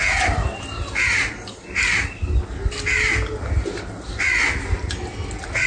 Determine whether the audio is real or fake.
real